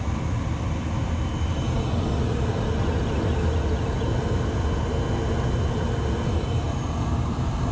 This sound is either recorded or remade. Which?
recorded